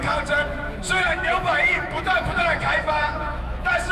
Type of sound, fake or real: fake